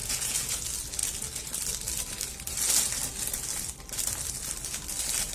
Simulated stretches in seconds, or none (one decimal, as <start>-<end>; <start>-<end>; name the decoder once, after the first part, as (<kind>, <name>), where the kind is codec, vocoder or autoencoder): 0.0-0.6 (vocoder, Vocos)